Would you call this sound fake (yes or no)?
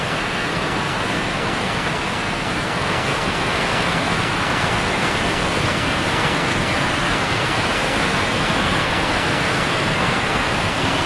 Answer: yes